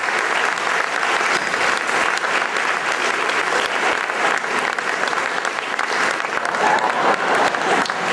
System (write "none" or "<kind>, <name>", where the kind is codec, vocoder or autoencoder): none